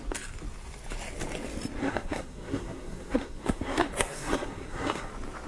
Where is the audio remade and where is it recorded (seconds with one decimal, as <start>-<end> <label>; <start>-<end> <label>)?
0.0-1.8 recorded; 1.8-5.1 remade; 5.1-5.5 recorded